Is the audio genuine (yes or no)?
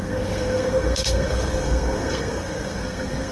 no